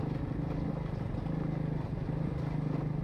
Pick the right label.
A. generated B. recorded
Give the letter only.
B